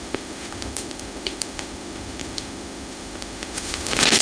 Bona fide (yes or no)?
no